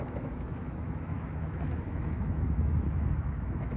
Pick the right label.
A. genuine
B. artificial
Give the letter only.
B